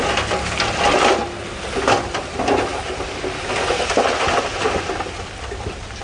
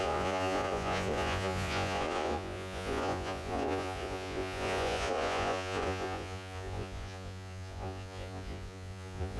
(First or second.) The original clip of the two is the first